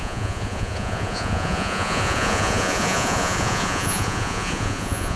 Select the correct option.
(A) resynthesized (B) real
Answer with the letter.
A